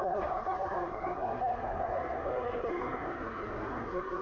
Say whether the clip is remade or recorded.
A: remade